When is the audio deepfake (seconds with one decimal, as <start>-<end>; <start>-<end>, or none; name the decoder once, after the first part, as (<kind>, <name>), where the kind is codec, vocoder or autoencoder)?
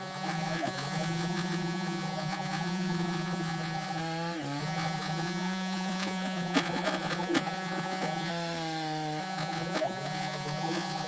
0.0-4.0 (vocoder, Vocos); 4.6-8.3; 9.2-11.1